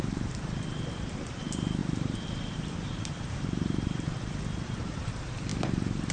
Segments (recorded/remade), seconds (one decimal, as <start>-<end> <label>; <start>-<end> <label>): 0.0-6.1 remade